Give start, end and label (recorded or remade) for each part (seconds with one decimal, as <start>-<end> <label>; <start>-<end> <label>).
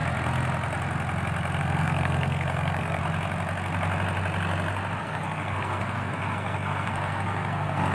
0.0-1.6 recorded; 1.6-3.0 remade; 3.0-5.0 recorded; 5.0-7.9 remade